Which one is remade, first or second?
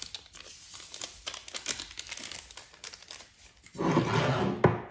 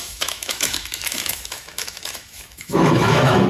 second